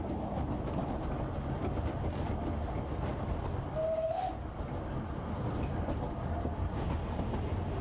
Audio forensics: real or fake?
real